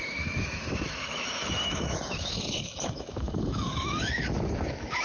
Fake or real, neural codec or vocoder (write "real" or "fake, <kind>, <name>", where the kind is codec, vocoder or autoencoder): fake, autoencoder, DAC-VAE